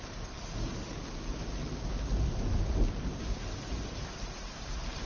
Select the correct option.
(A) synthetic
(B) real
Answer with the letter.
B